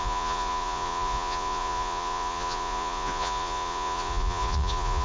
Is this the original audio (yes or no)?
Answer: no